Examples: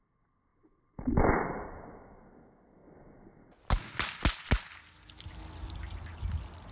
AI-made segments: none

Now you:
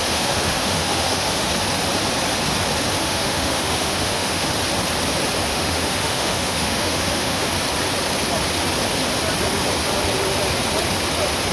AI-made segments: 0.0-1.5 (autoencoder, DAC-VAE); 3.0-4.5; 5.5-7.5